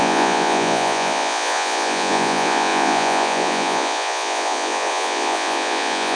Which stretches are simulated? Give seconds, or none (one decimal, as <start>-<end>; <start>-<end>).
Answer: 0.0-6.2